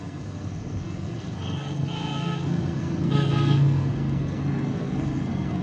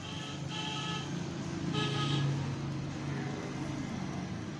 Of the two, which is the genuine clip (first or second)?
second